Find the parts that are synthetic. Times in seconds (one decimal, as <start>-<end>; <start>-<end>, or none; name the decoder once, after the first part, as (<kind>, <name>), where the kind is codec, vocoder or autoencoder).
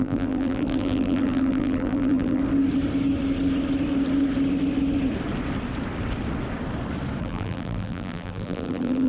0.0-2.4 (vocoder, BigVGAN v2); 7.2-9.1